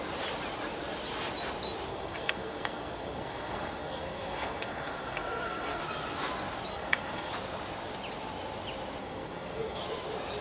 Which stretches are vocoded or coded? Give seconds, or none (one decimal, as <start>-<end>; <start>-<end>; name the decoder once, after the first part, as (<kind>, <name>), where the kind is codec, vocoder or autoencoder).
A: 1.9-5.8 (codec, SNAC); 6.7-7.3; 9.0-9.8